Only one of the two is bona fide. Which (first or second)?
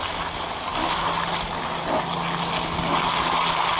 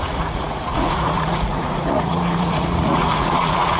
first